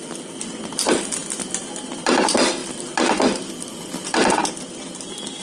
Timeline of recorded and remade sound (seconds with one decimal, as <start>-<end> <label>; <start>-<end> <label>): 0.0-5.4 recorded